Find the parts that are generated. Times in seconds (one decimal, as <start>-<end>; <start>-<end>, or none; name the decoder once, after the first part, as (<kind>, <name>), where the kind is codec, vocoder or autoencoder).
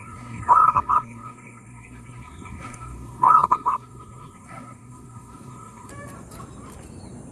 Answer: 0.0-5.9 (codec, SNAC)